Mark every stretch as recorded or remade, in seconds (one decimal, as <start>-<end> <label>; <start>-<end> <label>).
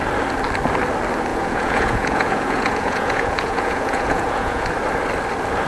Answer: 0.0-1.3 recorded; 1.3-4.7 remade; 4.7-5.7 recorded